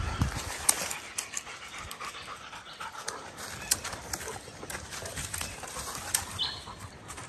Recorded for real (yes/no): yes